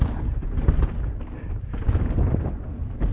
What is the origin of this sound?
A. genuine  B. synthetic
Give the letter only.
A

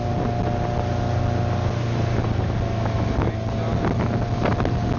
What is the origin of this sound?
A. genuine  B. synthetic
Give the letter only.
A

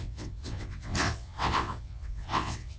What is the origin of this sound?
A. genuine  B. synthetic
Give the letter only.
B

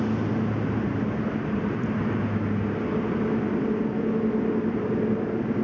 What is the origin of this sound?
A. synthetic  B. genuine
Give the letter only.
B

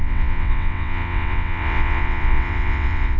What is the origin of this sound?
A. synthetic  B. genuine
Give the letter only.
A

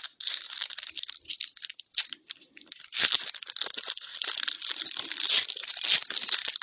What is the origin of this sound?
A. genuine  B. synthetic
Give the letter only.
A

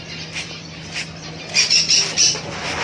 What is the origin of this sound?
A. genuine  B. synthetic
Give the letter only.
A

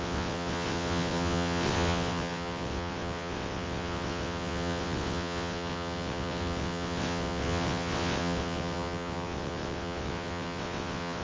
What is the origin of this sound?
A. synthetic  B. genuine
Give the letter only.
A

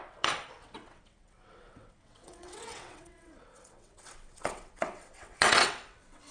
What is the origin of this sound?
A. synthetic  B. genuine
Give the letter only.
A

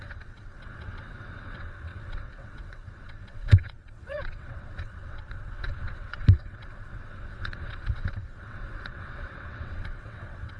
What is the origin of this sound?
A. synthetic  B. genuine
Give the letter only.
A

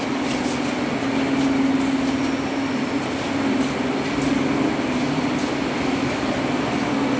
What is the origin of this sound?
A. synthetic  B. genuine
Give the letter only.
B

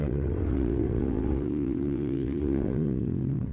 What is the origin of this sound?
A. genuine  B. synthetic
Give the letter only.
B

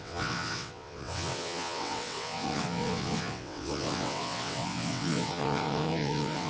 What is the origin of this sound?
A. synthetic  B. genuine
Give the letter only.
A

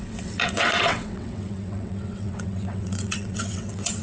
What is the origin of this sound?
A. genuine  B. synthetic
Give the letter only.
B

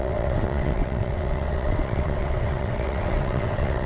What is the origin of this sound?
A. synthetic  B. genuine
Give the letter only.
A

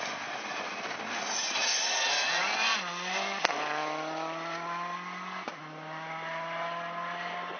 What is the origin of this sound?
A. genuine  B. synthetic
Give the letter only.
A